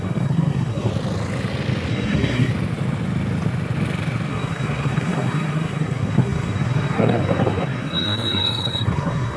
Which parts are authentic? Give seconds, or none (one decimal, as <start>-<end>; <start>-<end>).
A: 0.9-1.9; 2.5-4.3